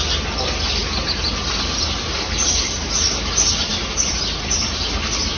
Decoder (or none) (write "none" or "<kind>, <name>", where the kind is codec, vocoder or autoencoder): none